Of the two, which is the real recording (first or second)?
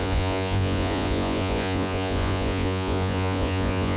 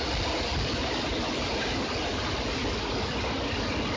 second